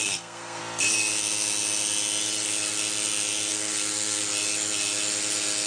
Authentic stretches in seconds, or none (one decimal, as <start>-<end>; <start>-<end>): 0.6-3.5; 4.2-5.7